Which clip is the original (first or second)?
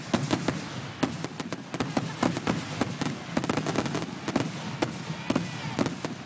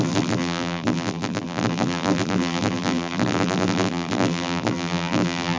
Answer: first